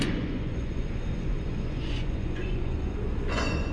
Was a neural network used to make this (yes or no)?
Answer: yes